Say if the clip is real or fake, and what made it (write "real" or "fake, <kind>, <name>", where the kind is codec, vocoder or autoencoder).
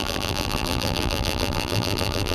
fake, vocoder, BigVGAN v2